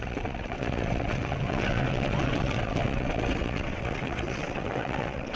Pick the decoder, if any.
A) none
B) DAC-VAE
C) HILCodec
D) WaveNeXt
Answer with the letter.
D